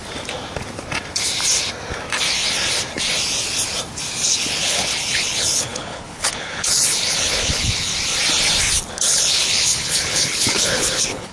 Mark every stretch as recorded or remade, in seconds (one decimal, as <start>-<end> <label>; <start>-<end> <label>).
0.0-4.3 recorded; 4.3-7.9 remade; 7.9-8.9 recorded; 8.9-11.3 remade